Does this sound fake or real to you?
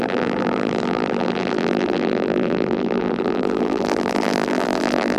fake